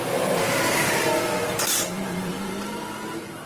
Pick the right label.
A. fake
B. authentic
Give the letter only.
A